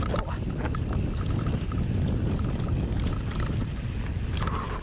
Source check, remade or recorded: recorded